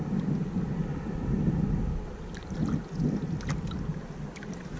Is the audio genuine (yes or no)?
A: yes